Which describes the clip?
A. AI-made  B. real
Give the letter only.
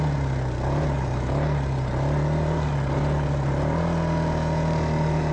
B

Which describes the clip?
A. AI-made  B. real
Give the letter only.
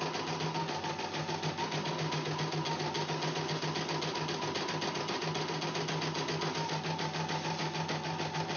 B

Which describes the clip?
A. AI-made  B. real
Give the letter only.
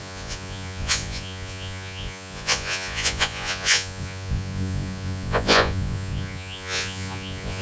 A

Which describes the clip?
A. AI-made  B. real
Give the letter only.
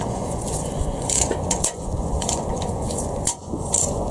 A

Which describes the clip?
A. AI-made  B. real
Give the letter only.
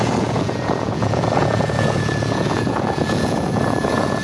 A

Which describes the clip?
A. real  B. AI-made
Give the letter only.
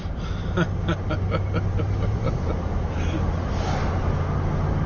A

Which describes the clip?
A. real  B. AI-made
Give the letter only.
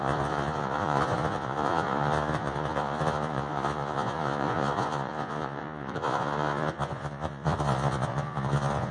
B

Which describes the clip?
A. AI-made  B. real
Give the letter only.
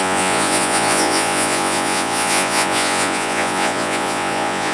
A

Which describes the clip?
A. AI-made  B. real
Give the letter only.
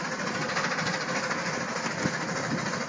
B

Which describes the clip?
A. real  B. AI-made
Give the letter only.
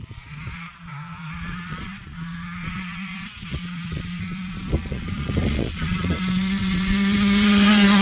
B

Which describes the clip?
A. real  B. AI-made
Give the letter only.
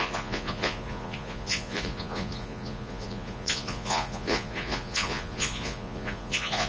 B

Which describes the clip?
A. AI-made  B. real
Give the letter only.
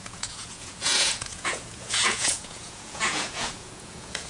A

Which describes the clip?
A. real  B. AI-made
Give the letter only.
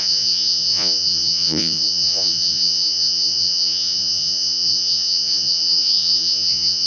B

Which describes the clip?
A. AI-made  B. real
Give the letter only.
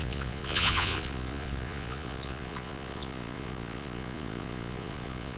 A